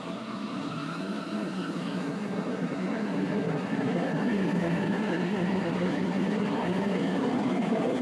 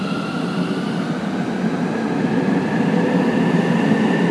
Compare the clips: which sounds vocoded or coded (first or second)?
first